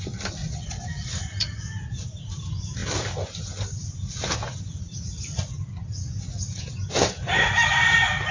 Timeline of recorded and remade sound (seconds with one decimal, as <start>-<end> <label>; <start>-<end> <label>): 0.0-0.4 recorded; 0.4-1.2 remade; 1.2-8.3 recorded